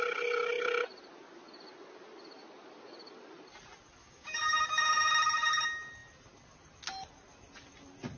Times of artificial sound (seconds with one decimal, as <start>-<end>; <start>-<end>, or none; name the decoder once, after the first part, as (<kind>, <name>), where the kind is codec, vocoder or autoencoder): 4.0-5.1 (codec, DAC)